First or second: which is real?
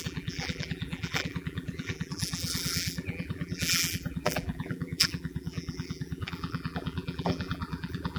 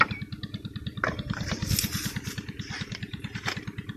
second